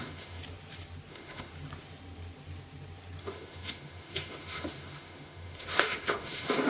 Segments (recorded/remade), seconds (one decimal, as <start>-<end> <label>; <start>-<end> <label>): 0.0-0.4 remade; 0.4-1.1 recorded; 1.1-1.5 remade; 1.5-3.2 recorded; 3.2-6.7 remade